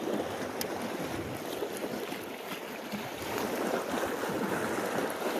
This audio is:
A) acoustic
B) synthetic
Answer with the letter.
A